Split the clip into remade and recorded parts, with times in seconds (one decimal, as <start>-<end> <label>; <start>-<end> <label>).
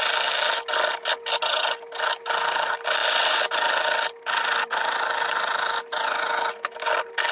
0.0-7.3 recorded